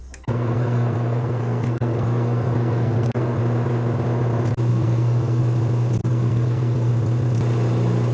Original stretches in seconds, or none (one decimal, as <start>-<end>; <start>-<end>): 3.4-4.7; 5.4-6.0; 6.9-8.1